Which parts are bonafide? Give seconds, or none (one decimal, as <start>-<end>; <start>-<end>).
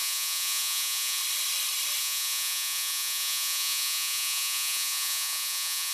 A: 1.2-2.0